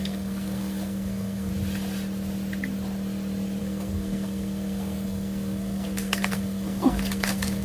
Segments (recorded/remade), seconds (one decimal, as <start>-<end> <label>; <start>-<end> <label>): 0.0-1.5 remade; 1.5-3.6 recorded; 3.6-7.6 remade